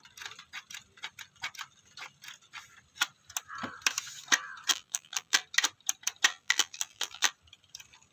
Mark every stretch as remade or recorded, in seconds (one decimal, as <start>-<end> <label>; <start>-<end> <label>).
0.0-4.7 recorded; 4.7-5.4 remade; 5.4-6.3 recorded; 6.3-7.3 remade; 7.3-8.1 recorded